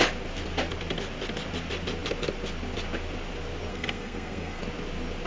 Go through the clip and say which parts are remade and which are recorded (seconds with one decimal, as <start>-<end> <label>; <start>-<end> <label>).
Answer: 0.0-3.7 recorded; 3.7-4.6 remade; 4.6-5.3 recorded